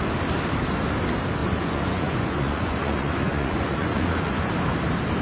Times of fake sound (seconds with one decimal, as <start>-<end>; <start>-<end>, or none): 1.4-4.5